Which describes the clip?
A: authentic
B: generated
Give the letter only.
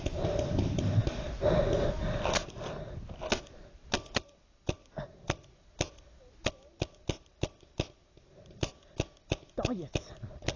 A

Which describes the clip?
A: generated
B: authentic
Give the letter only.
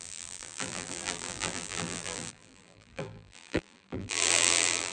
A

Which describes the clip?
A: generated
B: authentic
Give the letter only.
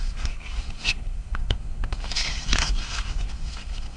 A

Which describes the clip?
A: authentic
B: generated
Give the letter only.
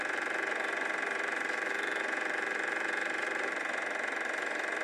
B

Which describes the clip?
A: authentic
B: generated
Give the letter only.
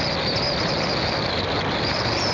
A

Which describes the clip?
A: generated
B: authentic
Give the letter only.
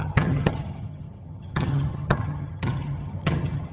A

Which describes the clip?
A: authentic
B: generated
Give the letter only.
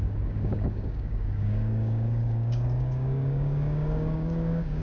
B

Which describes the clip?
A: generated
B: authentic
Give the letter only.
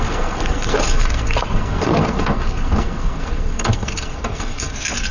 A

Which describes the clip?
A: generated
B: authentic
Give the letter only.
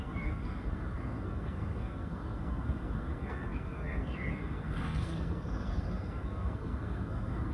A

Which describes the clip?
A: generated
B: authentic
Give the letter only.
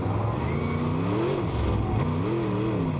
B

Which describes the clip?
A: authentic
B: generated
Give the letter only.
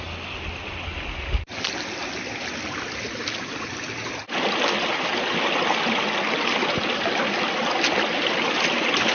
A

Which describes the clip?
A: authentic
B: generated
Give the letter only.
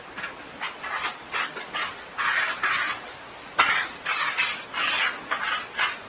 A